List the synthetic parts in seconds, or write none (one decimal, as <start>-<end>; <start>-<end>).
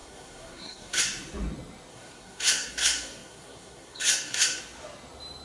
0.0-1.0; 1.9-4.6